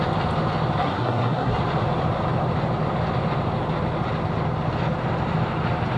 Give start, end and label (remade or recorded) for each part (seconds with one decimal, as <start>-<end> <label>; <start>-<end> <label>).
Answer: 0.0-0.8 recorded; 0.8-1.6 remade; 1.6-6.0 recorded